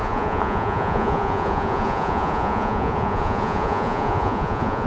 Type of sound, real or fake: fake